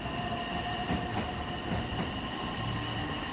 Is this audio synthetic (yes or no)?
no